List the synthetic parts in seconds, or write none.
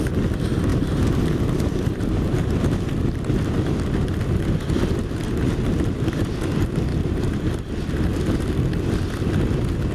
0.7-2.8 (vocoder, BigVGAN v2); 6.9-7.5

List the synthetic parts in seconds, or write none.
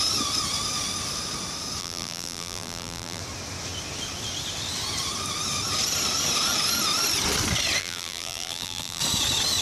1.8-3.2 (vocoder, BigVGAN v2); 7.8-9.0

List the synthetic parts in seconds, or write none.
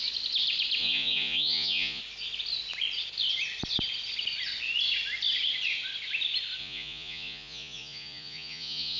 0.8-2.0 (vocoder, Vocos); 6.6-9.0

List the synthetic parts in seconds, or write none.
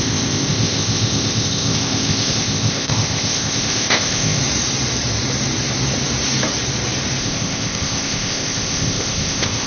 0.0-4.4 (codec, ZipCodec); 7.2-9.7